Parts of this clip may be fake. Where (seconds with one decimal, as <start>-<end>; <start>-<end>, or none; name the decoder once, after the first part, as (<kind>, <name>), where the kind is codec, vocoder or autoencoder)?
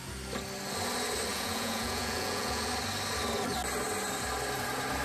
1.3-2.7 (vocoder, Vocos)